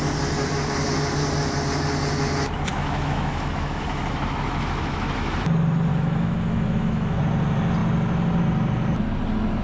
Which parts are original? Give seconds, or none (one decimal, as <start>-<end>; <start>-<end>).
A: 0.0-2.7; 5.4-5.9; 7.2-9.6